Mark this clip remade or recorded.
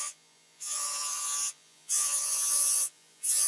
remade